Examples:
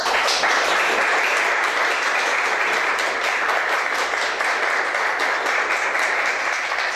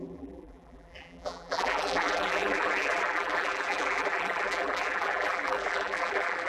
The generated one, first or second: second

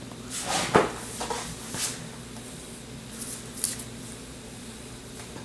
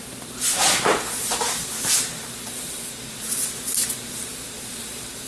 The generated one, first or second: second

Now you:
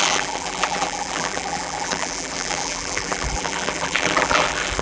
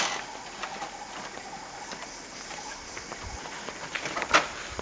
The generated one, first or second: first